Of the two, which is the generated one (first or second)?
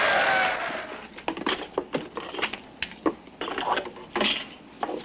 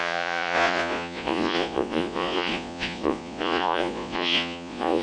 second